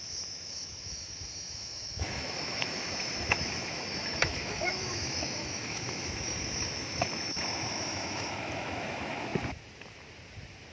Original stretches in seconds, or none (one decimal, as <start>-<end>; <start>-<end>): 9.3-10.7